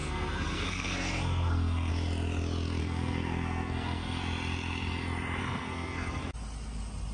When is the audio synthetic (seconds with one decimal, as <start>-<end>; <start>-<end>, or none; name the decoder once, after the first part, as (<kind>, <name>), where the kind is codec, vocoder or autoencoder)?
0.0-1.9 (codec, SNAC); 2.8-4.2; 5.4-6.2